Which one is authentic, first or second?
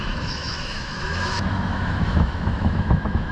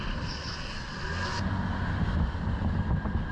second